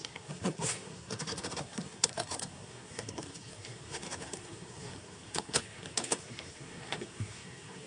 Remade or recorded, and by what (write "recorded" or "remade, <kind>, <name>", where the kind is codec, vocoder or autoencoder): remade, codec, SNAC